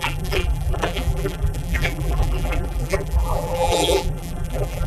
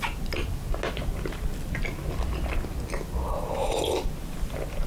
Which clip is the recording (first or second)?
second